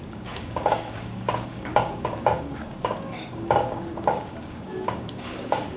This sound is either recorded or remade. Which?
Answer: remade